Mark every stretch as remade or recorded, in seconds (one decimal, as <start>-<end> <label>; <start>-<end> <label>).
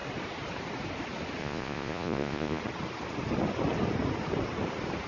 0.0-1.4 recorded; 1.4-2.6 remade; 2.6-5.1 recorded